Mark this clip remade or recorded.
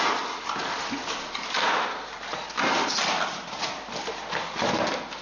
recorded